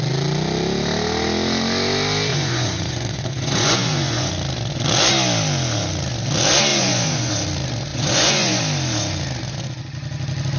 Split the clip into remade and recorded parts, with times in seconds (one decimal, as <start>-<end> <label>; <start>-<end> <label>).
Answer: 0.0-2.3 recorded; 2.3-4.3 remade; 4.3-6.7 recorded; 6.7-7.3 remade; 7.3-7.9 recorded; 7.9-8.6 remade; 8.6-10.6 recorded